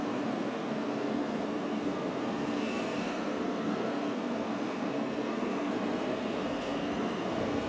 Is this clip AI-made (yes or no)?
yes